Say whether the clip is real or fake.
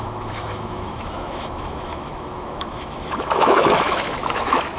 fake